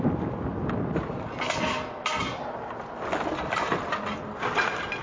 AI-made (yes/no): no